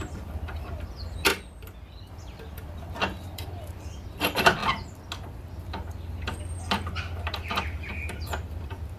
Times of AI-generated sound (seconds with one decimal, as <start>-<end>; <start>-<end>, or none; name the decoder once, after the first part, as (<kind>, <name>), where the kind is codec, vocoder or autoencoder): 0.0-1.3 (vocoder, BigVGAN v2); 2.1-4.6; 5.6-9.0